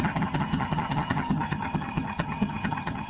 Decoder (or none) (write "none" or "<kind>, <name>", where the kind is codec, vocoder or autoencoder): vocoder, HiFi-GAN